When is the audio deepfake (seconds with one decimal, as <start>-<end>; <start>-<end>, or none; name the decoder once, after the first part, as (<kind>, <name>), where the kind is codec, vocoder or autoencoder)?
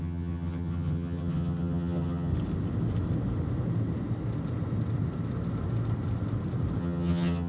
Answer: 0.0-2.3 (vocoder, HiFi-GAN); 6.8-7.5